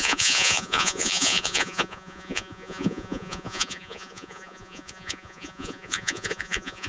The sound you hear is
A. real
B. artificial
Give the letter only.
B